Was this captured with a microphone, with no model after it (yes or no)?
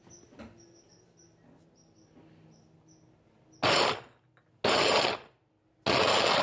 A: yes